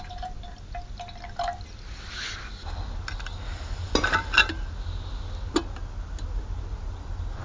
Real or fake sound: real